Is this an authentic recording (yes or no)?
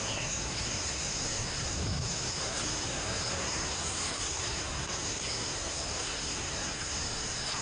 no